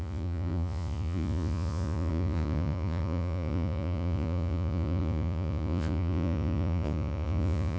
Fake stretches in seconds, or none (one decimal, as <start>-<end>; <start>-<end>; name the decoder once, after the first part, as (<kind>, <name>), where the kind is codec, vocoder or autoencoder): 0.0-7.8 (vocoder, Vocos)